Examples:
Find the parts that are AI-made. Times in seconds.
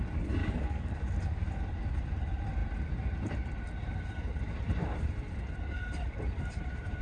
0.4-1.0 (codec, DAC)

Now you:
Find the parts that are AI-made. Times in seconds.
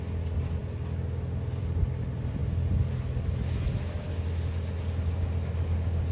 none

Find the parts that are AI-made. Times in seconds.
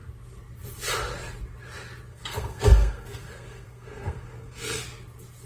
2.1-4.8 (codec, SNAC)